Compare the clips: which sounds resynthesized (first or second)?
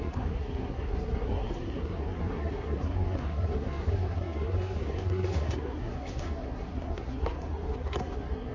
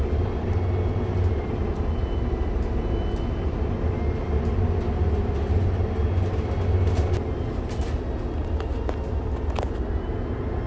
first